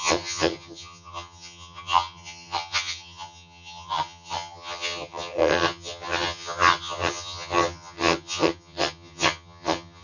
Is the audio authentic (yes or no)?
no